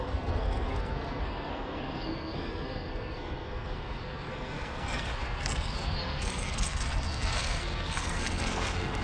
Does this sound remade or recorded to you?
remade